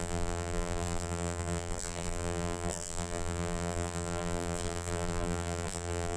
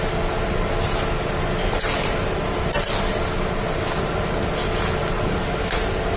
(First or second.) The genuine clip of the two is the second